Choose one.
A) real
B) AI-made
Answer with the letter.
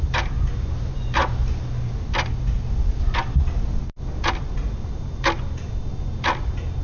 A